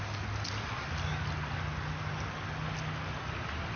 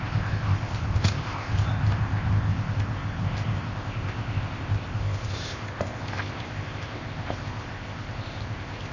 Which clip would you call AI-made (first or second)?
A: second